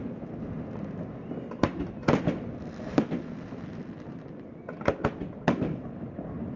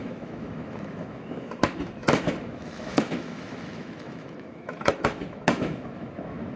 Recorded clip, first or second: first